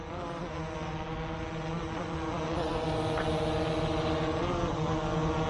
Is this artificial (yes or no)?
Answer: no